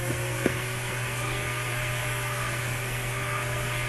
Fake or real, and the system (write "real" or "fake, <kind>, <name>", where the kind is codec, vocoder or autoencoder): fake, codec, SNAC